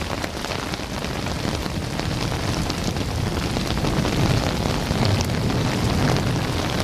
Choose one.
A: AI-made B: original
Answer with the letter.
B